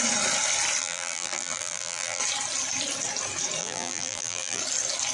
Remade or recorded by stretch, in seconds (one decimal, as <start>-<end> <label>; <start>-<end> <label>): 0.0-0.8 recorded; 0.8-2.2 remade; 2.2-3.6 recorded; 3.6-4.6 remade; 4.6-5.1 recorded